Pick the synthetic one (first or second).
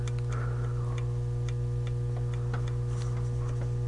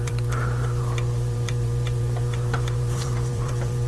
second